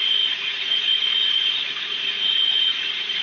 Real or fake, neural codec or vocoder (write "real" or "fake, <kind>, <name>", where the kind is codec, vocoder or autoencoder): fake, vocoder, Vocos